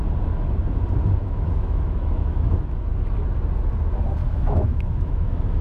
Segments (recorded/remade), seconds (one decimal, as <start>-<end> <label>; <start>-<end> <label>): 0.0-1.2 recorded; 1.2-2.8 remade; 2.8-4.2 recorded; 4.2-5.6 remade